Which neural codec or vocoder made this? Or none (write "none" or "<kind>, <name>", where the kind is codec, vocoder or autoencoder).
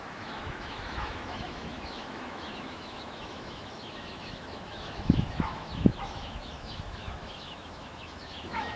autoencoder, DAC-VAE